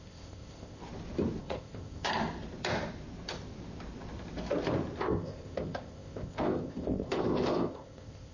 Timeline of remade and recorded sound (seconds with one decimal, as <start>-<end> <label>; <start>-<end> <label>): 0.0-0.8 remade; 0.8-1.4 recorded; 1.4-2.1 remade; 2.1-5.0 recorded; 5.0-8.3 remade